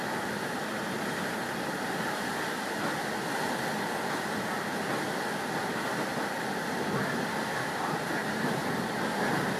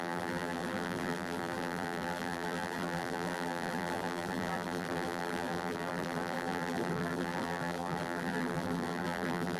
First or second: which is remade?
second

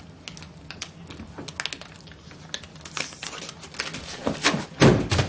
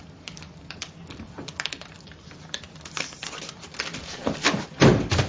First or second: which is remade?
second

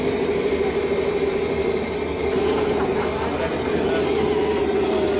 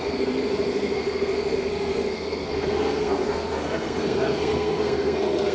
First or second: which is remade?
second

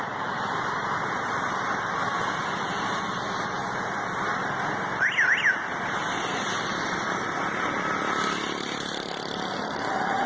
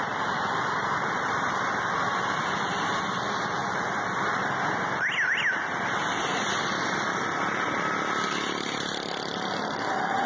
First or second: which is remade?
second